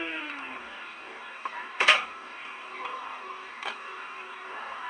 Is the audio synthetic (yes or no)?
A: yes